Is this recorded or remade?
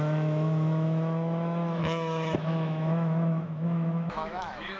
remade